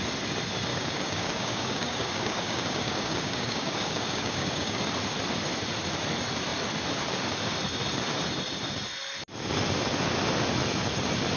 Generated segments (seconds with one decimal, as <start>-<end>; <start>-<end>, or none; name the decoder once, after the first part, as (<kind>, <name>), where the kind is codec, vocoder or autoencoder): 0.7-4.8 (codec, DAC)